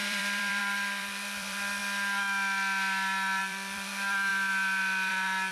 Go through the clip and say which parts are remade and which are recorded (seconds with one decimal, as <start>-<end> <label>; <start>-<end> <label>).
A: 0.0-1.8 remade; 1.8-3.4 recorded; 3.4-5.5 remade